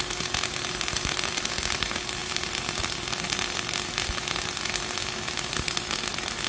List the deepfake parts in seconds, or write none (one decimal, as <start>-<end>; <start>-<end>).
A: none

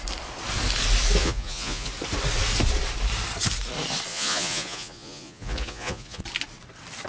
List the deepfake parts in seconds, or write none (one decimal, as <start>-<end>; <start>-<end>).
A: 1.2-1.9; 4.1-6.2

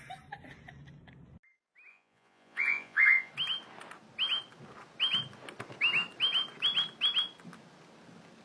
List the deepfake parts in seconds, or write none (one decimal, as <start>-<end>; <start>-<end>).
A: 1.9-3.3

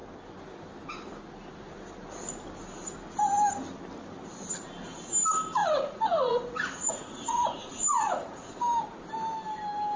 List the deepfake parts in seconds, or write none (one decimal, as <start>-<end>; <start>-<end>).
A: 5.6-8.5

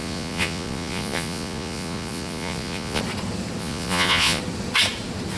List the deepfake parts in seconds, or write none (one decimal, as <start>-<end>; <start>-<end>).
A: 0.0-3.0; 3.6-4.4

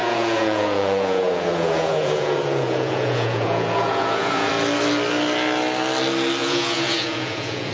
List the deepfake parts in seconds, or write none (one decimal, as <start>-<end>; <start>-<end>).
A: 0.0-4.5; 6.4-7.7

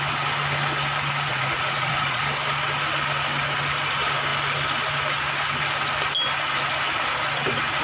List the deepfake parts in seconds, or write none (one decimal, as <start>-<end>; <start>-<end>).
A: 1.3-2.2